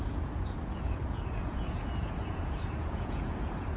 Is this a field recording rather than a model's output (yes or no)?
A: no